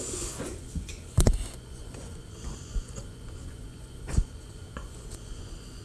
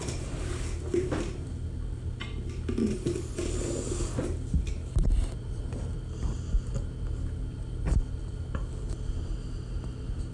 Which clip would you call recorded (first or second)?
second